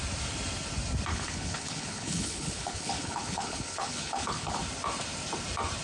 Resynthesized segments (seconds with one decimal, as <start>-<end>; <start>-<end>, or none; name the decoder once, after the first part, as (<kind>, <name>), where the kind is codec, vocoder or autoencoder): 1.1-4.6 (codec, HILCodec)